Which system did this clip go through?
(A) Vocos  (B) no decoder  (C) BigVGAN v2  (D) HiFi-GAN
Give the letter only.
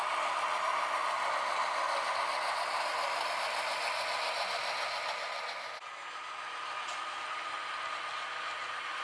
B